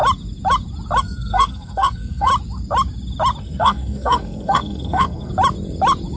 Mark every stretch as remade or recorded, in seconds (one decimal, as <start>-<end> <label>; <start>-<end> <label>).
0.0-1.0 recorded; 1.0-2.3 remade; 2.3-3.4 recorded; 3.4-5.3 remade; 5.3-6.2 recorded